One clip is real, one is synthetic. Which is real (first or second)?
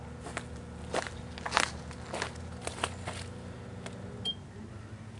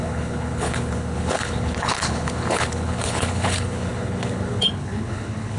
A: first